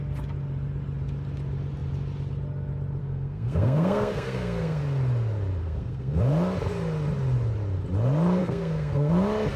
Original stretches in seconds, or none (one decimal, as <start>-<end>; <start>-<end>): 0.0-3.0; 4.8-5.6; 6.2-8.4; 9.1-9.6